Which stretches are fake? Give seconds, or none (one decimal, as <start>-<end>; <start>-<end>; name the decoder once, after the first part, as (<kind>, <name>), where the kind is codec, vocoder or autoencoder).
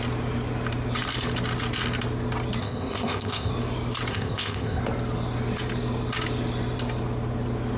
2.6-3.5 (codec, ZipCodec); 4.1-4.8